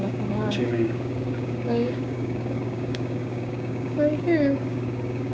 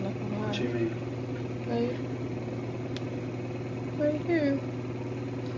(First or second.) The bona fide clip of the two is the second